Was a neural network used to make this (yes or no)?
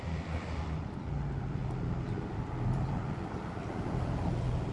yes